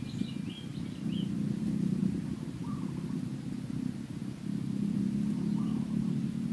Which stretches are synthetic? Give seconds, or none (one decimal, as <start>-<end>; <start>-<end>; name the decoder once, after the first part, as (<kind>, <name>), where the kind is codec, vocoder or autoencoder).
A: none